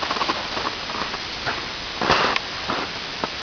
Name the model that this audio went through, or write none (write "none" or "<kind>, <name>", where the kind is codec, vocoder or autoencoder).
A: none